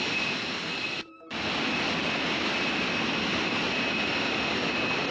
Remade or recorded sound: recorded